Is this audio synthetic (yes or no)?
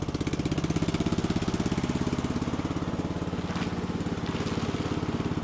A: no